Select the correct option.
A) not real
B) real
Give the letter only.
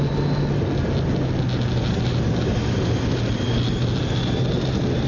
B